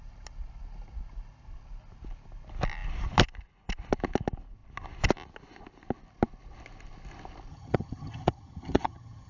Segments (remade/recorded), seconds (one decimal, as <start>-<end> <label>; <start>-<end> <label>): 0.0-7.5 recorded; 7.5-9.3 remade